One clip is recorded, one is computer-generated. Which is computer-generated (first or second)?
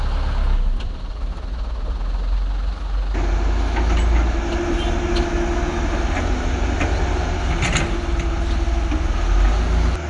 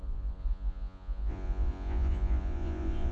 second